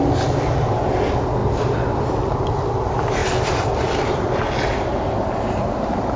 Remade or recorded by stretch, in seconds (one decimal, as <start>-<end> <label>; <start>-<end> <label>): 0.0-1.4 recorded; 1.4-2.1 remade; 2.1-3.2 recorded; 3.2-3.9 remade; 3.9-6.2 recorded